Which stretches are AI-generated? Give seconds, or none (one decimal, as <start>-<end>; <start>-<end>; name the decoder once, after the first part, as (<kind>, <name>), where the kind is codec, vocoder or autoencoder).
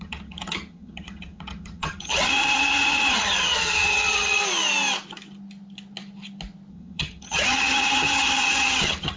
0.0-4.4 (vocoder, HiFi-GAN); 6.7-9.2